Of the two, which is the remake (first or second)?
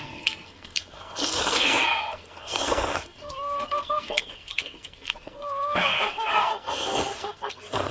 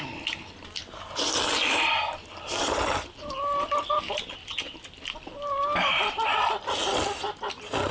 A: first